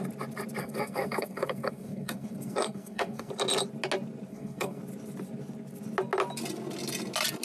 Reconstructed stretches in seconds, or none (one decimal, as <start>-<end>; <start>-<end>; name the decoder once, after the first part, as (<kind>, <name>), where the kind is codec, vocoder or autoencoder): 0.6-3.3 (codec, SNAC); 4.3-4.8